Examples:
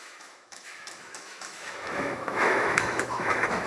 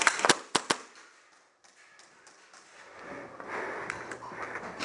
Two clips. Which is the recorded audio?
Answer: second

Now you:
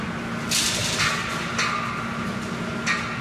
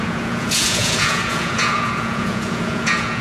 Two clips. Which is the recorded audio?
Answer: first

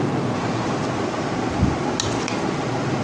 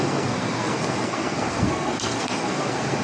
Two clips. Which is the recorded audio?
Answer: first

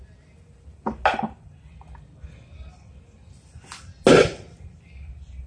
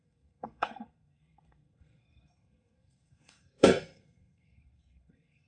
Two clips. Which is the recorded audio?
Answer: first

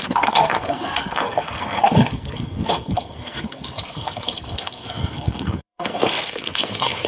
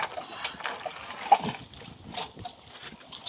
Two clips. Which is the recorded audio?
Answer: second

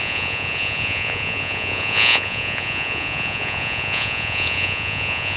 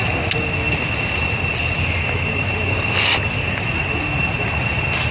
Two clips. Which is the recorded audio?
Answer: second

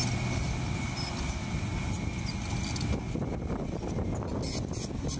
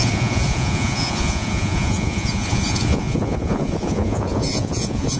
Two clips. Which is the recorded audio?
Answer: first